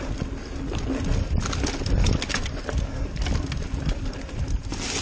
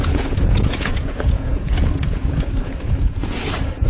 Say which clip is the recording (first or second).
first